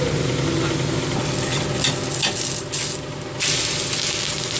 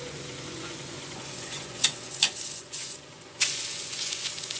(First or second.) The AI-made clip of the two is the second